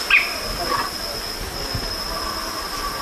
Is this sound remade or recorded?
recorded